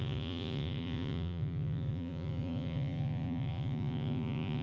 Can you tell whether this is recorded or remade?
remade